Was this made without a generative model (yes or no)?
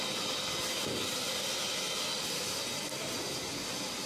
yes